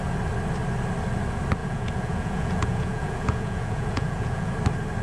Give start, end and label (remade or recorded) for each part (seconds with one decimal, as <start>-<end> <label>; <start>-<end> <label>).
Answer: 0.0-1.6 recorded; 1.6-4.5 remade; 4.5-5.0 recorded